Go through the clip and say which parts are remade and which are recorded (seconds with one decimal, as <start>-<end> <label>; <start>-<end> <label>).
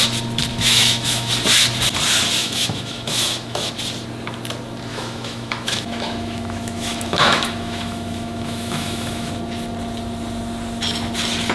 0.0-0.5 recorded; 0.5-1.3 remade; 1.3-2.4 recorded; 2.4-3.7 remade; 3.7-4.9 recorded; 4.9-9.3 remade; 9.3-11.5 recorded